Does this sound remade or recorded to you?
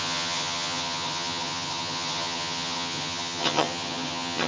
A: remade